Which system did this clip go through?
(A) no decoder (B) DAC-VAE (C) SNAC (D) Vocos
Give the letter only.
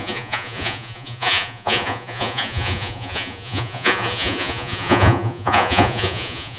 D